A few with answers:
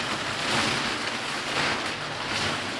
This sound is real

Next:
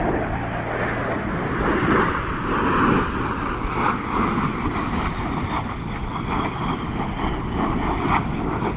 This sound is real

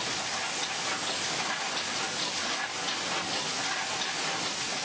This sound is real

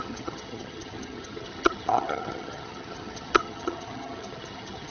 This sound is fake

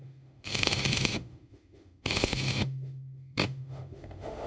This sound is fake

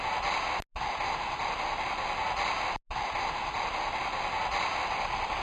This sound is real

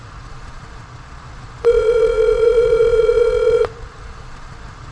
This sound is fake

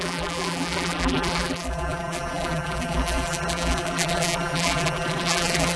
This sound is fake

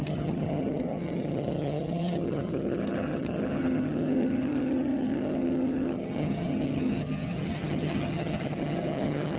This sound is fake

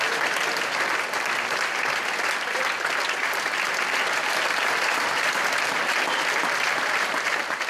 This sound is real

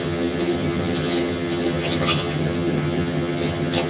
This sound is fake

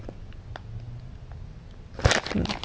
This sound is real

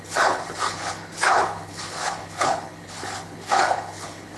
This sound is fake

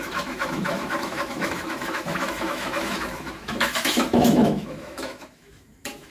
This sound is fake